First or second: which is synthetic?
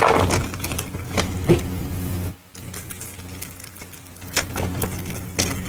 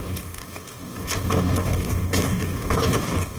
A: second